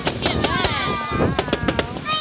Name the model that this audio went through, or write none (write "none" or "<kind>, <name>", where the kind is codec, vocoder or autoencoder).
none